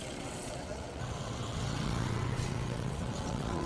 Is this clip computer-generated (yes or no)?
yes